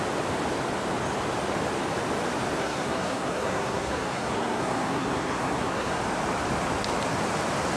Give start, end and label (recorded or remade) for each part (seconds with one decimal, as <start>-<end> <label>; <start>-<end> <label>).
0.0-2.6 recorded; 2.6-6.0 remade; 6.0-7.8 recorded